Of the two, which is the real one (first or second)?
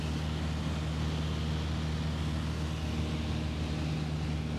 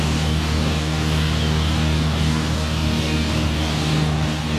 first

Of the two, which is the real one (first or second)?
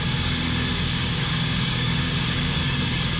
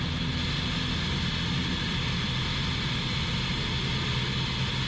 second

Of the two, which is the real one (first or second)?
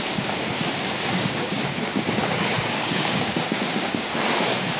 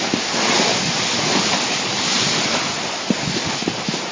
second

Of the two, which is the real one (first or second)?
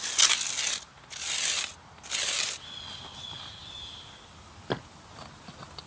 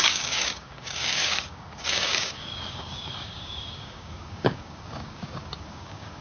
first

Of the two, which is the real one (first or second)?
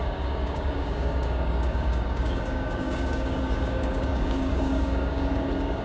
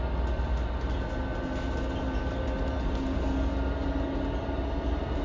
second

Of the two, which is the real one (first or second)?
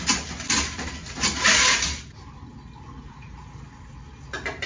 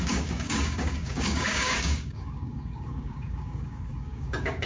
first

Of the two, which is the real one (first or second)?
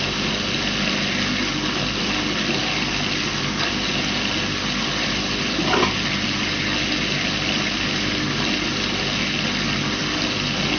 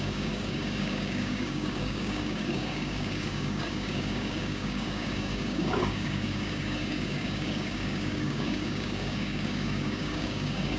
first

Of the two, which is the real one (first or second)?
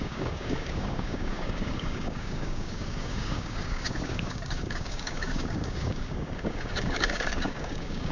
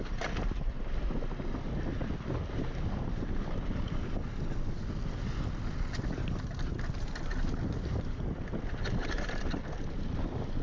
second